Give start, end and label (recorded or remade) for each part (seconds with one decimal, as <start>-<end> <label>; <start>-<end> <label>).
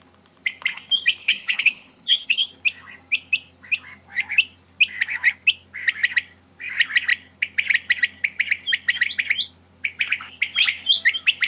0.0-1.2 recorded; 1.2-2.5 remade; 2.5-11.5 recorded